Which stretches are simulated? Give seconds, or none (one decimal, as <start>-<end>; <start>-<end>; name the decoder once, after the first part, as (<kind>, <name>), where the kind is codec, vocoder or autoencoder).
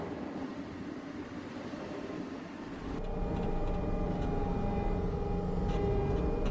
0.5-1.7 (vocoder, BigVGAN v2)